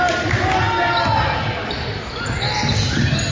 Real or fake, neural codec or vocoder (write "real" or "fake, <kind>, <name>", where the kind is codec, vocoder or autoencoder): real